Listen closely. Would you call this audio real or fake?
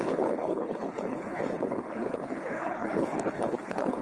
fake